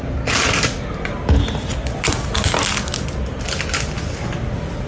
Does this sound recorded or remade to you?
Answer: recorded